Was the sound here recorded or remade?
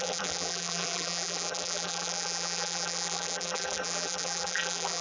remade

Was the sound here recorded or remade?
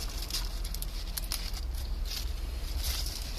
recorded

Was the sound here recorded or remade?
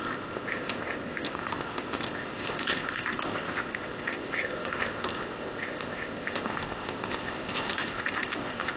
remade